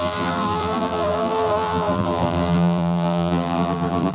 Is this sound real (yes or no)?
no